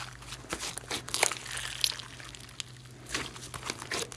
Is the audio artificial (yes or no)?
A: no